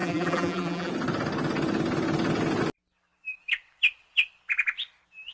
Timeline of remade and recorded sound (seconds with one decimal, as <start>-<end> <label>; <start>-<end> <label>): 0.0-0.9 remade; 0.9-5.3 recorded